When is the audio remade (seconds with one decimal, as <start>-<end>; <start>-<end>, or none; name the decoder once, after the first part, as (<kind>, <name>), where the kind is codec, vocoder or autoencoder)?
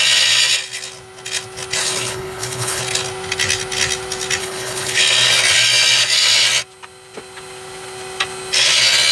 1.8-2.8 (codec, HILCodec); 4.4-5.0